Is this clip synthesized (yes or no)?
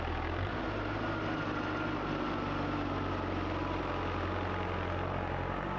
no